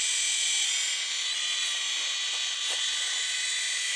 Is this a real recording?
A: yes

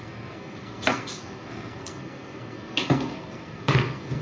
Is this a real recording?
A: no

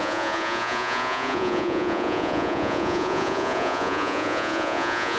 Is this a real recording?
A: no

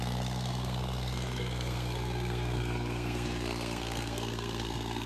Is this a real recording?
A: no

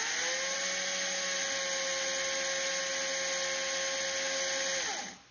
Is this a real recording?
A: yes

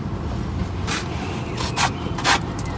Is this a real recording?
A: no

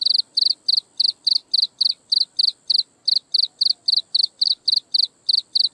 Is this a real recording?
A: yes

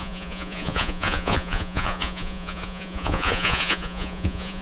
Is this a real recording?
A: no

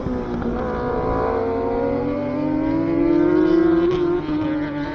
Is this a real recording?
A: yes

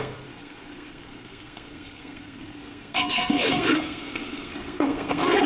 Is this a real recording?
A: no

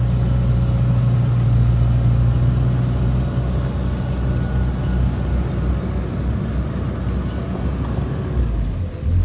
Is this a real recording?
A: yes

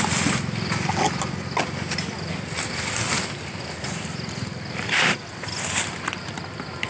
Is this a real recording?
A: yes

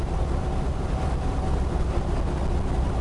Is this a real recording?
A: yes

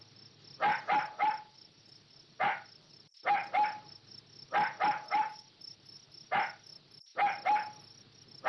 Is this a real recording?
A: yes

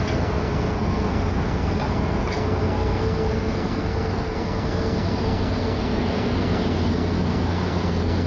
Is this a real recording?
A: no